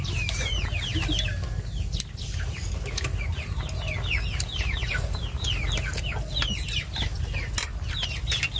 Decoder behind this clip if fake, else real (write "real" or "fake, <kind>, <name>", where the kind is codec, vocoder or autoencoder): real